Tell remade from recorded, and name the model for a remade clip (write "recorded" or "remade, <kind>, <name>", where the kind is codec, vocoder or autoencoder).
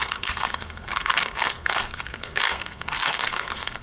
remade, codec, SNAC